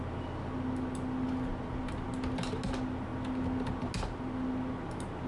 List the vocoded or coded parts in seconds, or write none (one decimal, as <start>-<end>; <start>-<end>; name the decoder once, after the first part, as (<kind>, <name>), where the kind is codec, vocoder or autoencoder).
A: none